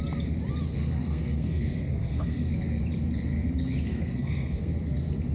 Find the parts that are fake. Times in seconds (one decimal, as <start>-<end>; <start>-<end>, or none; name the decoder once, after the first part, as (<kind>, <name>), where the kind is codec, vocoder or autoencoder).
1.0-2.5 (codec, SNAC); 3.9-4.7